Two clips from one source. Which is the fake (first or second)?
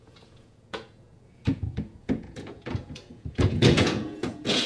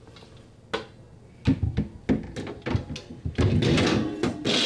first